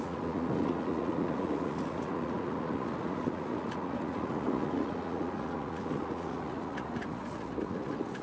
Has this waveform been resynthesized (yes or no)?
yes